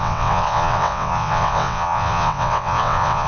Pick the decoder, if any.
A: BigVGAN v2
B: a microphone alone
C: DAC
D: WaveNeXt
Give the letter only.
D